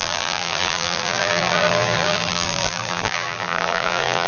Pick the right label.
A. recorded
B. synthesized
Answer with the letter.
B